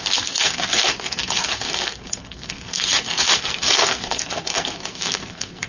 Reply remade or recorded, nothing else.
remade